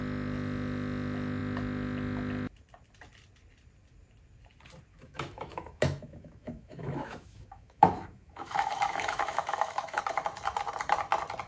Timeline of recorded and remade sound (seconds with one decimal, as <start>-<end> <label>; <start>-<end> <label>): 0.0-4.9 recorded; 4.9-10.0 remade; 10.0-11.5 recorded